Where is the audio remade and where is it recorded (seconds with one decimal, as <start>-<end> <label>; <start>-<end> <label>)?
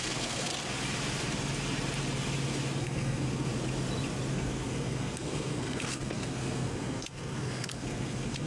0.0-0.5 remade; 0.5-2.8 recorded; 2.8-3.5 remade; 3.5-4.3 recorded; 4.3-8.5 remade